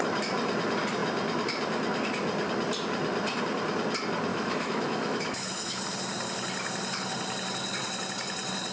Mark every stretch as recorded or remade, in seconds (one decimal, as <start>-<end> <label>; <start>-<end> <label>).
0.0-4.3 recorded; 4.3-5.8 remade; 5.8-8.7 recorded